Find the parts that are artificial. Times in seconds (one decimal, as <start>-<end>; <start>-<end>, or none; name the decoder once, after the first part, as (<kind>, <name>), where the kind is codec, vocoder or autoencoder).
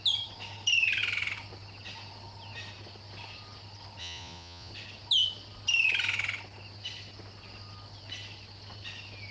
4.0-4.7 (vocoder, Vocos)